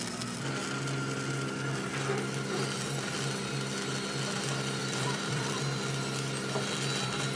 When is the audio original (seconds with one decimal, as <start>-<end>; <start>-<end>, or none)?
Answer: 0.0-4.8; 5.6-7.4